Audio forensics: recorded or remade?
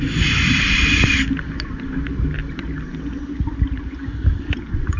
recorded